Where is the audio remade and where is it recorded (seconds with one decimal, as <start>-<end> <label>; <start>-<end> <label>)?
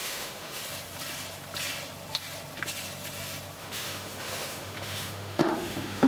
0.0-0.6 remade; 0.6-3.6 recorded; 3.6-6.1 remade